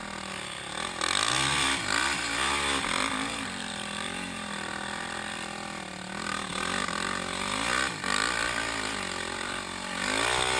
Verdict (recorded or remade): recorded